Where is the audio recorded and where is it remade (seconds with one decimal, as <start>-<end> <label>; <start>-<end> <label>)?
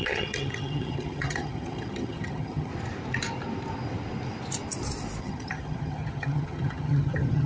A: 0.0-2.7 remade; 2.7-5.2 recorded; 5.2-7.5 remade